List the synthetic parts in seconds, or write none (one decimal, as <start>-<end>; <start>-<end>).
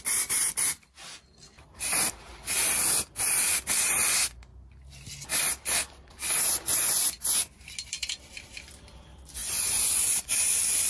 6.7-7.6; 9.4-10.3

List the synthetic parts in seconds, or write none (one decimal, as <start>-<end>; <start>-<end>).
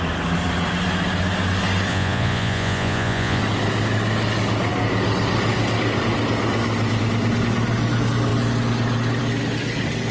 1.9-3.4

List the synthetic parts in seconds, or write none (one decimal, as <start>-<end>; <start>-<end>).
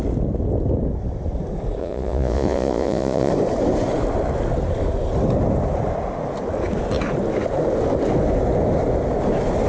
1.8-3.3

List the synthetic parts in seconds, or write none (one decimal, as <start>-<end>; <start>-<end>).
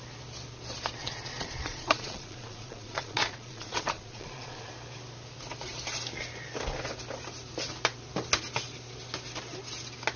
1.0-4.7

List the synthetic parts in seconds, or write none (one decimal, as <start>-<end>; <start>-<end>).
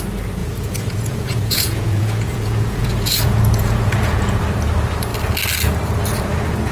0.4-4.4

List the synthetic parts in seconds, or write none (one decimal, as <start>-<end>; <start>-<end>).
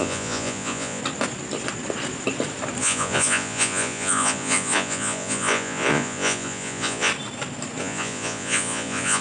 0.0-1.0; 2.8-7.1; 7.8-9.2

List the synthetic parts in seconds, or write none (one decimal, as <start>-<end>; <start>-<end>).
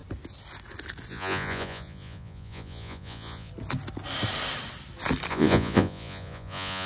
1.1-3.5; 5.3-6.9